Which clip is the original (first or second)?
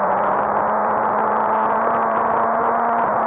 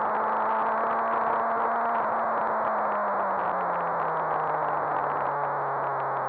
second